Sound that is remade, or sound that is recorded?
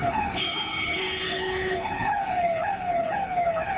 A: remade